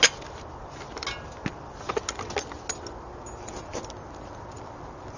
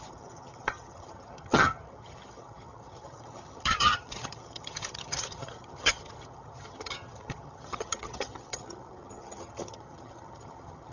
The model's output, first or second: second